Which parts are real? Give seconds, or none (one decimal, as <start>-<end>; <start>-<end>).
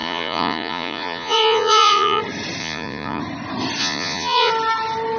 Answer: 2.2-2.6; 3.2-3.8; 4.5-5.2